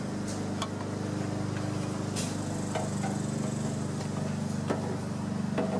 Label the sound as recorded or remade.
recorded